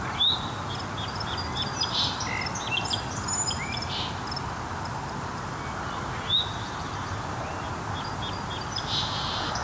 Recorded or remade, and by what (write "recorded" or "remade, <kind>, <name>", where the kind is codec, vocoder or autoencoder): recorded